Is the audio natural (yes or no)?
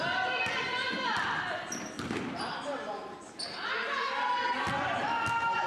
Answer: yes